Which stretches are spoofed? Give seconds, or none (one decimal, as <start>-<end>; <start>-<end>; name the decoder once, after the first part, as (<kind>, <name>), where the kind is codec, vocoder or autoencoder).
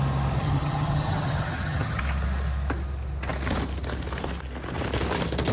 0.4-2.0 (vocoder, HiFi-GAN)